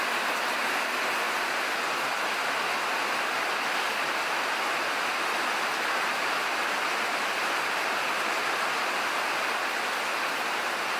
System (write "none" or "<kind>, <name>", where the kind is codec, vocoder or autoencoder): none